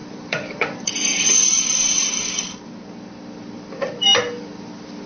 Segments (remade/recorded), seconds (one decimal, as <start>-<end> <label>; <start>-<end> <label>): 0.0-2.7 remade; 2.7-5.1 recorded

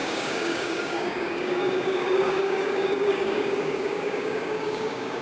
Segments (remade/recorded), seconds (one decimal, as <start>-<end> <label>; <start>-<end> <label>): 0.0-5.2 remade

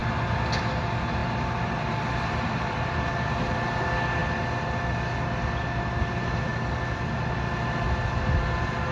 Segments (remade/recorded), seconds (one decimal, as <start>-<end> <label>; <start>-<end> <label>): 0.0-1.2 recorded; 1.2-2.8 remade; 2.8-8.9 recorded

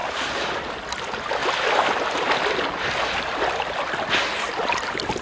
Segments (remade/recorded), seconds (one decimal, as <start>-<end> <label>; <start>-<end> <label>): 0.0-5.2 recorded

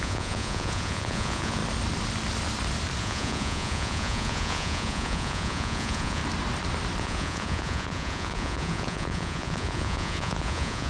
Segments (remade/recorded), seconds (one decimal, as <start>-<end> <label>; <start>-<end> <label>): 0.0-1.6 remade; 1.6-3.0 recorded; 3.0-6.2 remade; 6.2-7.0 recorded; 7.0-10.9 remade

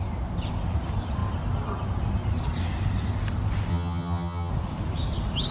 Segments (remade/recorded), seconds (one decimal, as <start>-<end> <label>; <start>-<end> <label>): 0.0-3.7 recorded; 3.7-4.5 remade; 4.5-5.5 recorded

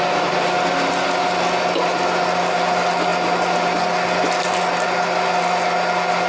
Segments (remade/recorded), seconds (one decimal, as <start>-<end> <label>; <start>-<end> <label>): 0.0-6.3 recorded

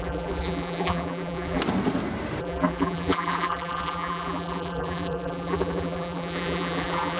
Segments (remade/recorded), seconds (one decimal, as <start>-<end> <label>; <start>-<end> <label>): 0.0-1.6 remade; 1.6-2.4 recorded; 2.4-7.2 remade